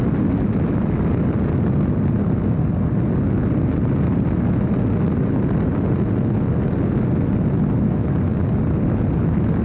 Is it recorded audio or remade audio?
recorded